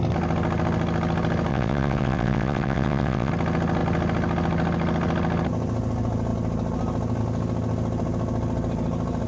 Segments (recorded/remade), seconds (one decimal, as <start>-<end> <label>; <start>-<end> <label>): 0.0-1.5 recorded; 1.5-3.3 remade; 3.3-9.3 recorded